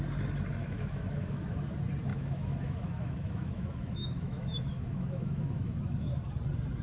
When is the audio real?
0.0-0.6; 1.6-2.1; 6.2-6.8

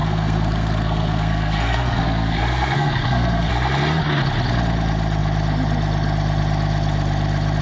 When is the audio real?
3.5-7.6

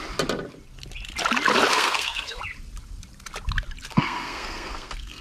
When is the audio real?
0.0-1.7; 2.4-3.9

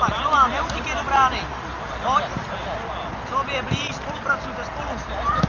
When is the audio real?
0.0-5.5